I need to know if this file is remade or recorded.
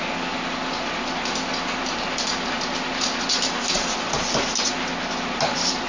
recorded